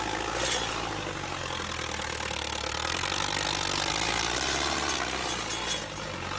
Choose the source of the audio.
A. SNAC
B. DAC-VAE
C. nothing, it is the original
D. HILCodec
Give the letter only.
C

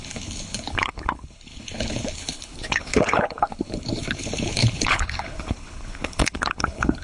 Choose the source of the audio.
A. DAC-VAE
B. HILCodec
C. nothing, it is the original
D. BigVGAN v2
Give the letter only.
B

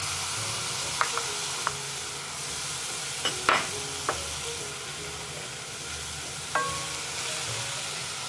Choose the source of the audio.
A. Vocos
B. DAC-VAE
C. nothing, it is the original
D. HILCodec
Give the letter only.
C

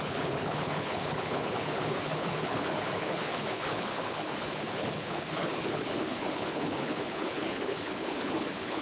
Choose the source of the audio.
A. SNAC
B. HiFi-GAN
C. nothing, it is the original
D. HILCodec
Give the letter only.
D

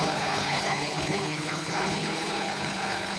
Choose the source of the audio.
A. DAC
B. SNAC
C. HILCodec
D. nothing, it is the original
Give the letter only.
C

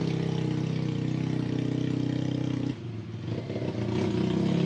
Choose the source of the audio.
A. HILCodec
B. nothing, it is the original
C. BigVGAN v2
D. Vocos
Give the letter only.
B